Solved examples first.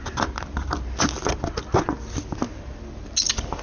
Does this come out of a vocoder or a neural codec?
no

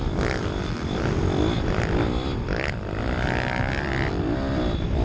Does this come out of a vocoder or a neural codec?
no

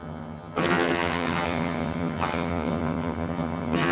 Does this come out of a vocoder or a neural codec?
yes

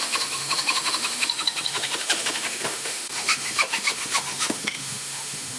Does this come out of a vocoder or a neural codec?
yes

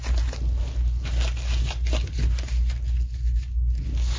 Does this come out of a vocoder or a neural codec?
no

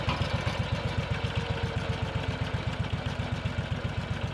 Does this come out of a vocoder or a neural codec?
no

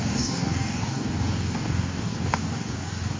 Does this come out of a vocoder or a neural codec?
yes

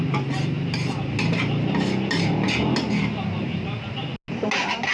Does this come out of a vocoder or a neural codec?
no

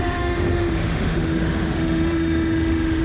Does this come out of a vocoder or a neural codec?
yes